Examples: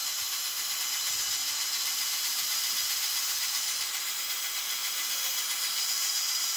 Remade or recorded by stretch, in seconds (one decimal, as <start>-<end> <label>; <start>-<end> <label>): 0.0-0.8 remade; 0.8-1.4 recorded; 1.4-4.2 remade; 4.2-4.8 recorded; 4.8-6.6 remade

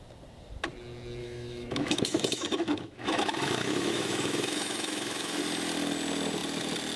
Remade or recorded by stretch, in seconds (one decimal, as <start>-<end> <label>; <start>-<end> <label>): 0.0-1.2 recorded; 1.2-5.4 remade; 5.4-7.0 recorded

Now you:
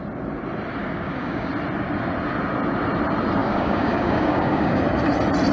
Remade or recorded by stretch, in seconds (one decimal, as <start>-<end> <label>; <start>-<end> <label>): 0.0-0.8 recorded; 0.8-1.5 remade; 1.5-3.4 recorded; 3.4-4.8 remade; 4.8-5.5 recorded